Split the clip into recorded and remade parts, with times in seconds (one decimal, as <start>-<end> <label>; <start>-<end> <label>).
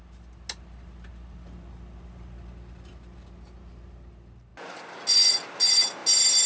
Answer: 0.0-6.5 recorded